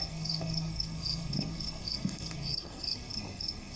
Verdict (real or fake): fake